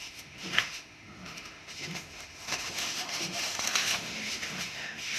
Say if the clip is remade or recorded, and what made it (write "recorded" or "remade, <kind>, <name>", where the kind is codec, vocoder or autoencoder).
remade, autoencoder, DAC-VAE